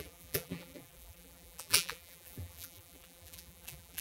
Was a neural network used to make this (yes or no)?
yes